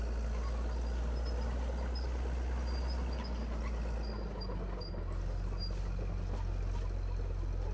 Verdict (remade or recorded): recorded